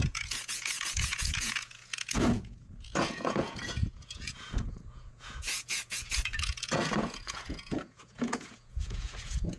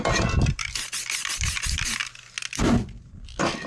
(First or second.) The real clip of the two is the second